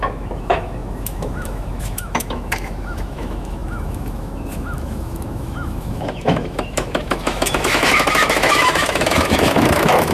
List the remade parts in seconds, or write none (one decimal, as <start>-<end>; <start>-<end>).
0.0-10.1